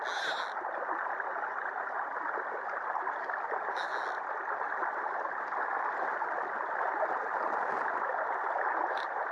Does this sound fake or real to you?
real